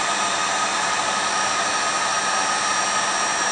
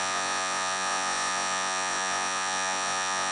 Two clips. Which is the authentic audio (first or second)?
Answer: first